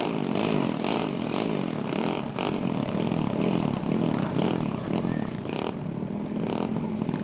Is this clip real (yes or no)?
yes